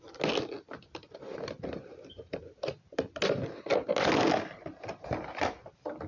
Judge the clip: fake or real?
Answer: real